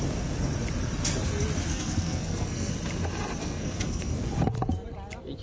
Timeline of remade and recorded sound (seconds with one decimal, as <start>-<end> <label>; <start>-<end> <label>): 0.0-1.7 recorded; 1.7-2.7 remade; 2.7-3.4 recorded; 3.4-4.3 remade; 4.3-5.4 recorded

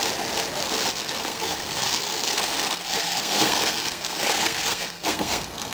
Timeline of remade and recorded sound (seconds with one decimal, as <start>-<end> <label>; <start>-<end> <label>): 0.0-1.0 recorded; 1.0-5.7 remade

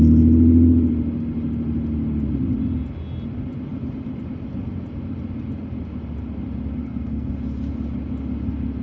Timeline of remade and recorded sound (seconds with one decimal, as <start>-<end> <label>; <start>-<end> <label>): 0.0-6.8 recorded; 6.8-7.3 remade; 7.3-8.8 recorded